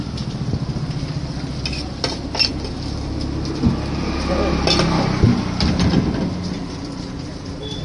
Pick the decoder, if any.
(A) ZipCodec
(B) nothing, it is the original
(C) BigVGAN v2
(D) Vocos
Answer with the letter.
B